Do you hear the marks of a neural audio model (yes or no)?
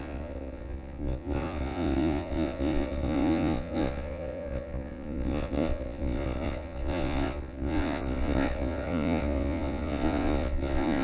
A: yes